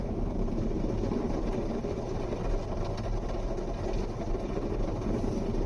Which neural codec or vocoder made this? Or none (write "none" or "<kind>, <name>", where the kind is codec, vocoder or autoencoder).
vocoder, BigVGAN v2